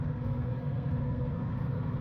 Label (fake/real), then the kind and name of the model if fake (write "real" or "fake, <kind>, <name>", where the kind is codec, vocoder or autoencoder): fake, codec, SNAC